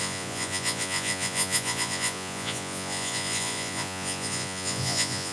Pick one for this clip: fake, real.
fake